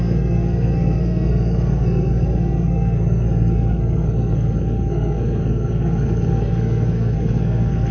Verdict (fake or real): fake